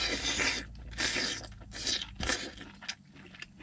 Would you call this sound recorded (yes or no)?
yes